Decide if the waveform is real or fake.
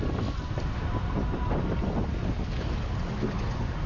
real